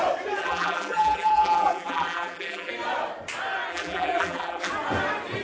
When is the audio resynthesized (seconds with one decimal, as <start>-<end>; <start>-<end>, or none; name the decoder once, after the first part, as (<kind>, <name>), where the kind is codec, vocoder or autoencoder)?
0.4-2.7 (vocoder, BigVGAN v2); 3.7-4.7